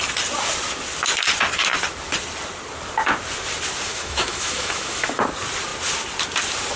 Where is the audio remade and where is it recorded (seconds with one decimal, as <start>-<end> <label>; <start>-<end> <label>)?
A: 0.0-3.9 recorded; 3.9-5.2 remade; 5.2-6.8 recorded

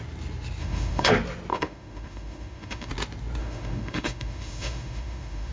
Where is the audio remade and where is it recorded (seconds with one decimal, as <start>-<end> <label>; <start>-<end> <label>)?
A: 0.0-0.6 recorded; 0.6-1.1 remade; 1.1-1.5 recorded; 1.5-2.9 remade; 2.9-3.4 recorded; 3.4-5.5 remade